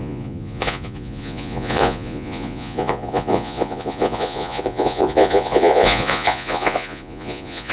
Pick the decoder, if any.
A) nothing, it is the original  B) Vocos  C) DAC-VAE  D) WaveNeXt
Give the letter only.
B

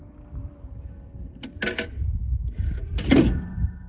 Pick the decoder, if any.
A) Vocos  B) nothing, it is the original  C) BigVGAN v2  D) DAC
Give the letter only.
B